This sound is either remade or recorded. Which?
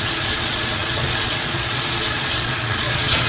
remade